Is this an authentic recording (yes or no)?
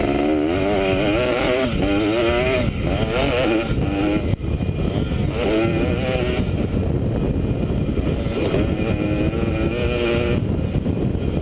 yes